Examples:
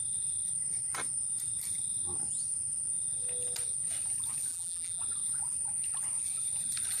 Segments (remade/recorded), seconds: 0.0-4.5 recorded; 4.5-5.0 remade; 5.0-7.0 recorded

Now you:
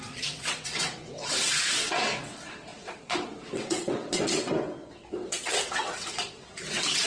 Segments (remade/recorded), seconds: 0.0-7.1 remade

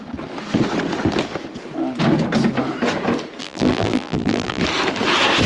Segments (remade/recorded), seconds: 0.0-3.4 recorded; 3.4-4.6 remade; 4.6-5.5 recorded

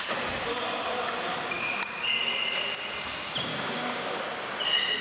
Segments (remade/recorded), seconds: 0.0-3.5 recorded; 3.5-4.2 remade; 4.2-5.0 recorded

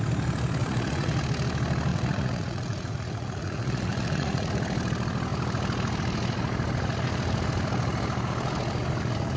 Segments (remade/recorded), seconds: 0.0-0.6 recorded; 0.6-1.2 remade; 1.2-1.9 recorded; 1.9-4.5 remade; 4.5-9.4 recorded

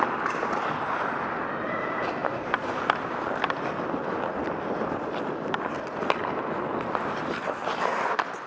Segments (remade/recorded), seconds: 0.0-8.5 recorded

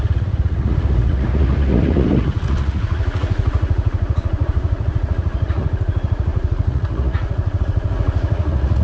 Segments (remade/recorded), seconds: 0.0-8.8 remade

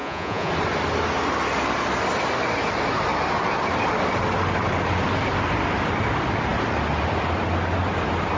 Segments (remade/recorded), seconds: 0.0-0.5 remade; 0.5-8.4 recorded